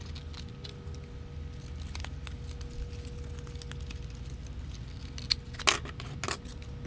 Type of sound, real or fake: real